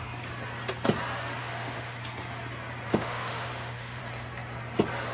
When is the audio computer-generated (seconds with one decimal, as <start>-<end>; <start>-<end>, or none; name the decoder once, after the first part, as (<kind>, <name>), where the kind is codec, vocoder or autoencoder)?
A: 1.4-2.0 (autoencoder, DAC-VAE); 2.9-4.0